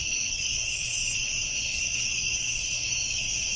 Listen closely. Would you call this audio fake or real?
fake